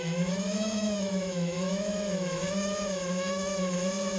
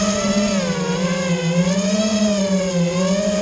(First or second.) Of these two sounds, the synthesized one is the first